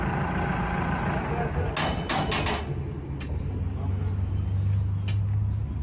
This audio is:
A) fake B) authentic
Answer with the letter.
B